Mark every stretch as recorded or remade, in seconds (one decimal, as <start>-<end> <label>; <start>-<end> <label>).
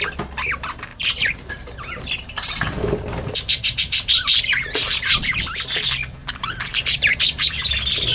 0.0-0.9 recorded; 0.9-4.6 remade; 4.6-6.2 recorded; 6.2-7.5 remade; 7.5-8.1 recorded